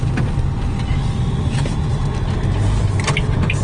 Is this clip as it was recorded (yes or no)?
yes